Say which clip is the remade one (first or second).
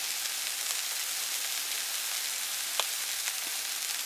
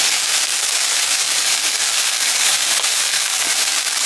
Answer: second